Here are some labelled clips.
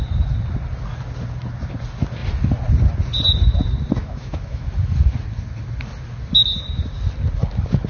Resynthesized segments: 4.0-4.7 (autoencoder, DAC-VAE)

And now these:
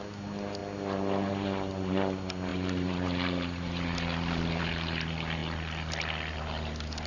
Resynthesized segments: 0.0-5.4 (vocoder, BigVGAN v2); 6.4-7.1

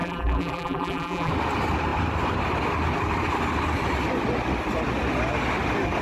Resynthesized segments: 0.0-1.3 (vocoder, BigVGAN v2)